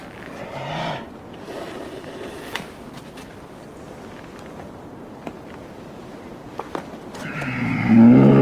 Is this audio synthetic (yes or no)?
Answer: no